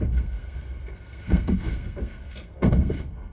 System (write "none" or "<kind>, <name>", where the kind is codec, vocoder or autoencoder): codec, SNAC